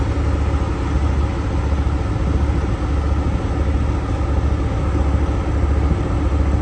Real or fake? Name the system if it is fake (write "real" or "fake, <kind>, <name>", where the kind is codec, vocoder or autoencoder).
real